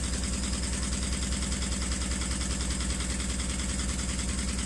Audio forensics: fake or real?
real